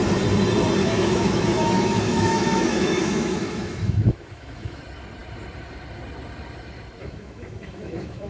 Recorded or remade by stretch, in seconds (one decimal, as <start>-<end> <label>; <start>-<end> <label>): 0.0-0.8 recorded; 0.8-4.8 remade; 4.8-7.0 recorded; 7.0-8.3 remade